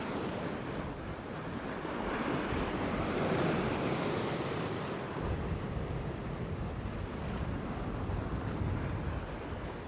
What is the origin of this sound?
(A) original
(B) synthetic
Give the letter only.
A